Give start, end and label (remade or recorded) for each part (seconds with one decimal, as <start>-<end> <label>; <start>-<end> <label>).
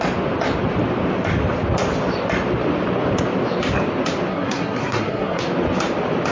0.0-4.3 recorded; 4.3-5.4 remade; 5.4-6.3 recorded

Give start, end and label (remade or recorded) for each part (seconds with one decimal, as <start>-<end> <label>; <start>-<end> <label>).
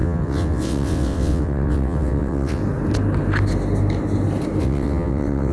0.0-2.6 remade; 2.6-4.6 recorded; 4.6-5.5 remade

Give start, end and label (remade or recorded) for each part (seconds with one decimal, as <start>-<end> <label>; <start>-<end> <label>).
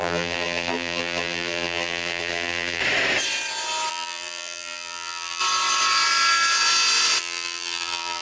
0.0-2.8 remade; 2.8-3.9 recorded; 3.9-5.4 remade; 5.4-7.2 recorded; 7.2-8.2 remade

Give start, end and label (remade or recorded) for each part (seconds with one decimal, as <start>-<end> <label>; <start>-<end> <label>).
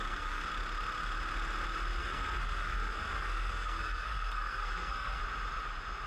0.0-0.5 remade; 0.5-2.0 recorded; 2.0-5.2 remade; 5.2-6.1 recorded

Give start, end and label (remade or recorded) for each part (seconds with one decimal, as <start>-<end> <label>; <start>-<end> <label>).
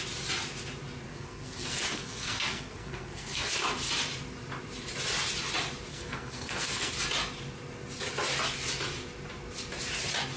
0.0-1.1 recorded; 1.1-3.5 remade; 3.5-5.9 recorded; 5.9-6.9 remade; 6.9-10.4 recorded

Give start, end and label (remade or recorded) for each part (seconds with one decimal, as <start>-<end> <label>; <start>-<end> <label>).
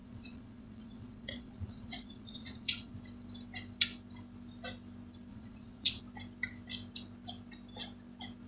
0.0-2.9 remade; 2.9-5.3 recorded; 5.3-6.0 remade; 6.0-8.5 recorded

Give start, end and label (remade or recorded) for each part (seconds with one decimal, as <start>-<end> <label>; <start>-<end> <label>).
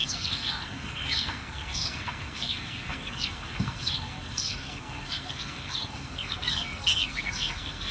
0.0-7.9 remade